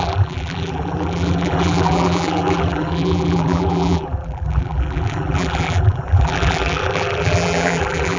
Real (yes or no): no